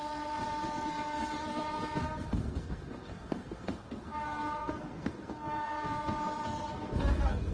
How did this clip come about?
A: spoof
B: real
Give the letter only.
A